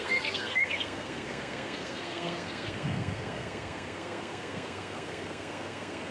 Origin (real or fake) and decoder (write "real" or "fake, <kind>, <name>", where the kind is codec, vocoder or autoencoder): fake, codec, SNAC